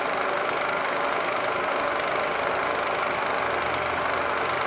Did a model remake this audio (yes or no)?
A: no